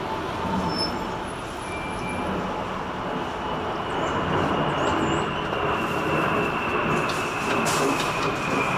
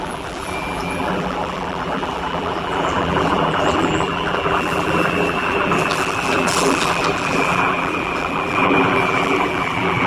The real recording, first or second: first